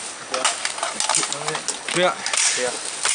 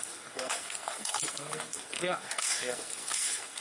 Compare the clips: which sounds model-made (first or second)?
second